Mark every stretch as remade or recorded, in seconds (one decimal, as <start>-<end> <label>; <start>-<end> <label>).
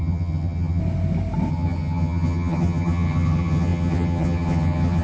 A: 0.0-0.8 remade; 0.8-1.5 recorded; 1.5-5.0 remade